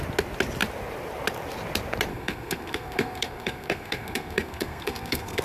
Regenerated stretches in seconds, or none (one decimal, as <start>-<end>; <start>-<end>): 2.1-5.4